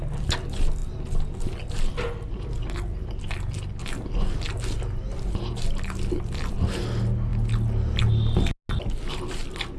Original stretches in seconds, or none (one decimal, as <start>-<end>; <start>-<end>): 0.0-9.8